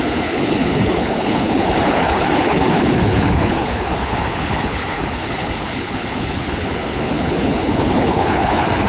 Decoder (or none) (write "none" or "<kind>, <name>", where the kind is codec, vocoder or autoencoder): codec, HILCodec